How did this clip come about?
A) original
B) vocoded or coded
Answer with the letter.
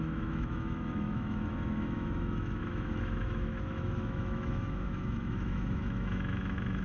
B